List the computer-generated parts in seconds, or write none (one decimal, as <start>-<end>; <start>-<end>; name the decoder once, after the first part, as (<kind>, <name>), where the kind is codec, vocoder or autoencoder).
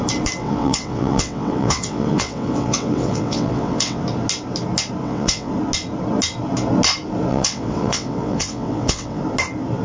0.4-4.0 (vocoder, WaveNeXt); 5.0-5.5; 7.3-9.2